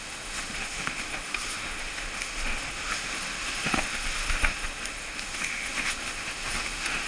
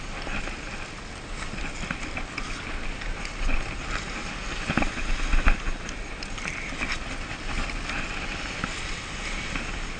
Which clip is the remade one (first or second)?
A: first